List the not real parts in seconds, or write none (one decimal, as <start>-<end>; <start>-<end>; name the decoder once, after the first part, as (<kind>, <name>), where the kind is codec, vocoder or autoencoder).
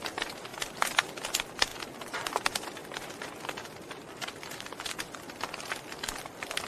2.8-4.1 (vocoder, BigVGAN v2)